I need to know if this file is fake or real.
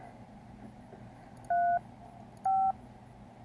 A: real